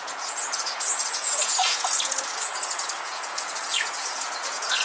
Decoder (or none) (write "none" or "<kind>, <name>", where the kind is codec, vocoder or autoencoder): vocoder, Vocos